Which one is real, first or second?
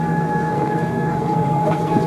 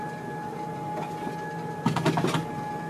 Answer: second